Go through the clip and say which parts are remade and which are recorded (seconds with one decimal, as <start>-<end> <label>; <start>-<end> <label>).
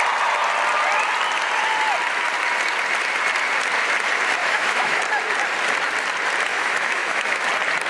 0.0-4.4 recorded; 4.4-5.0 remade; 5.0-6.5 recorded; 6.5-7.5 remade; 7.5-7.9 recorded